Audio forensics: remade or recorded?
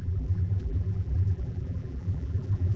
remade